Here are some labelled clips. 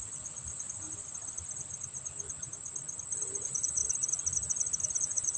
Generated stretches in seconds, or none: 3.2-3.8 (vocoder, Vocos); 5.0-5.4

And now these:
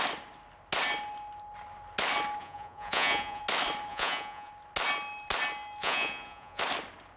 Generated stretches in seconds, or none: 2.4-3.4 (vocoder, Vocos); 3.9-4.5; 5.8-6.6

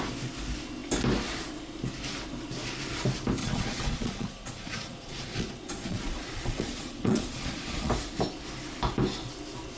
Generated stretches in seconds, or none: 3.4-7.9 (vocoder, Vocos)

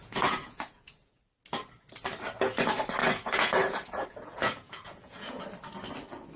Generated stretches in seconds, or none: 0.0-1.2 (vocoder, Vocos); 3.0-5.5

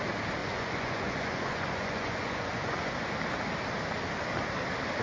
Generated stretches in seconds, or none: 0.4-2.9 (vocoder, Vocos)

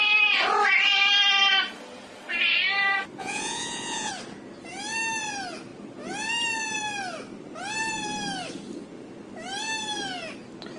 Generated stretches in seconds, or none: 3.2-4.1 (vocoder, Vocos)

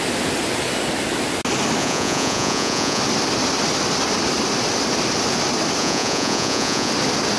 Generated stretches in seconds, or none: 1.8-3.0 (vocoder, Vocos); 5.8-6.9